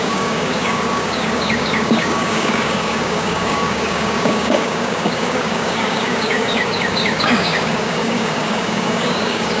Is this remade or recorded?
remade